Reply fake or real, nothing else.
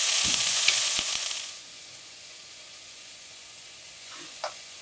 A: fake